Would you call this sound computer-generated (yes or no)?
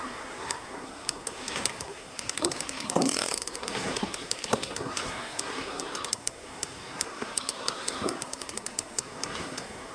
yes